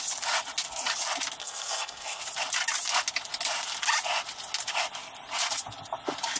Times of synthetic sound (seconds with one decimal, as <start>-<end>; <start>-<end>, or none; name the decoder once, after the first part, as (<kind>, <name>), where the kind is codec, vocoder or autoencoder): 1.4-2.2 (codec, SNAC)